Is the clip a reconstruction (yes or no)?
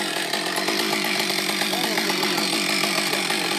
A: yes